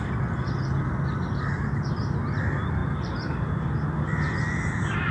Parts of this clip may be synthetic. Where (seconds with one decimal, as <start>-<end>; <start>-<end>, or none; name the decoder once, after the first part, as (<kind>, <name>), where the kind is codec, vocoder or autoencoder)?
2.8-3.5 (vocoder, BigVGAN v2)